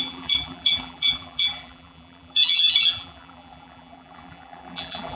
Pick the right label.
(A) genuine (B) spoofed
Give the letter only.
B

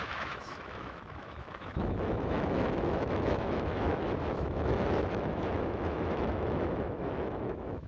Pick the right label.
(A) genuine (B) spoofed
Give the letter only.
B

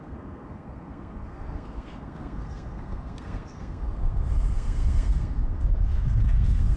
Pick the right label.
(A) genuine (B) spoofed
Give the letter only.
B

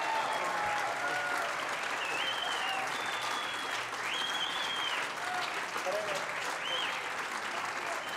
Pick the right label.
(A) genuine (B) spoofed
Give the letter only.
A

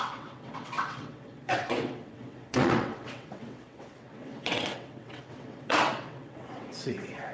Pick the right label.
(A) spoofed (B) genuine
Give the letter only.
A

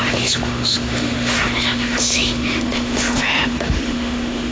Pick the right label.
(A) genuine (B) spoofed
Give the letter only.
B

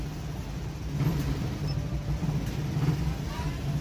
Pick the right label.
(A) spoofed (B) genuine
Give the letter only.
A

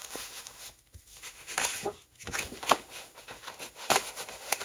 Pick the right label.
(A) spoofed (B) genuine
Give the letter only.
A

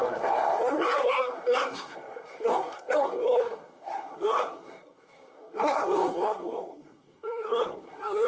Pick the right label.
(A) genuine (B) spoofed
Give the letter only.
B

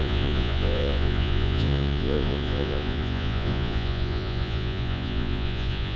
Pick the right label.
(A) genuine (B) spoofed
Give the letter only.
B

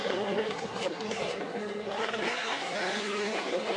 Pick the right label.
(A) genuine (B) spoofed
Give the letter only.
B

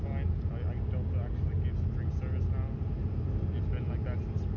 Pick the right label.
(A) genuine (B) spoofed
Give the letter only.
A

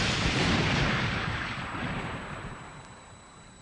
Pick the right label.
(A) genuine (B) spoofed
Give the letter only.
B